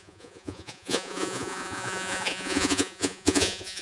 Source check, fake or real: fake